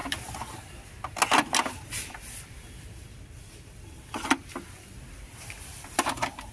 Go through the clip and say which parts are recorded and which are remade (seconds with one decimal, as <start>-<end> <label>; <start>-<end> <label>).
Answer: 0.0-1.7 recorded; 1.7-6.5 remade